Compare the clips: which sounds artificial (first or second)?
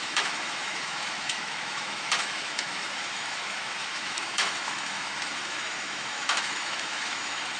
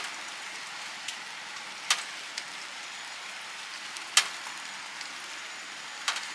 first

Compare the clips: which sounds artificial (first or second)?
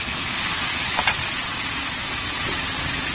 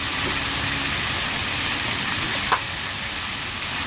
first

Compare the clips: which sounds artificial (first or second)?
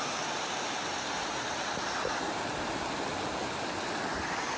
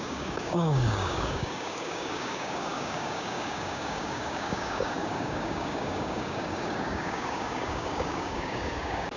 second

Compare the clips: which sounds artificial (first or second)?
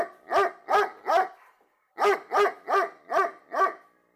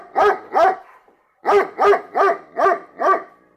second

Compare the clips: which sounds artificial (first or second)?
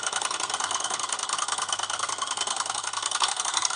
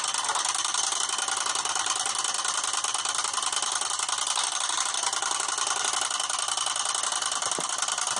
first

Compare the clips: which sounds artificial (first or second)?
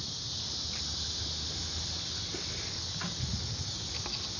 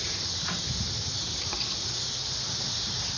second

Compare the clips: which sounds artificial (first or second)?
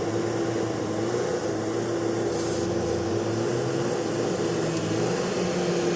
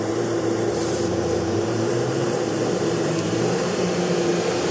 second